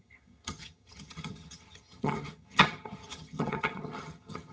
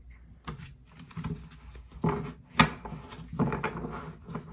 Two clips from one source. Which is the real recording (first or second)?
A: second